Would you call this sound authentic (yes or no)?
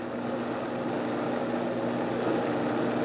yes